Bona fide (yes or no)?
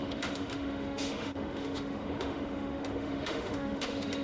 no